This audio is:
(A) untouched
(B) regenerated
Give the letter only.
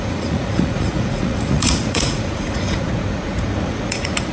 B